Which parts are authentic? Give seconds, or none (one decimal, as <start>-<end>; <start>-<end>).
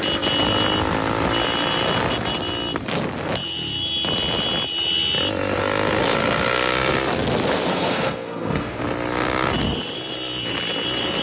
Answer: 0.0-7.7; 8.8-11.2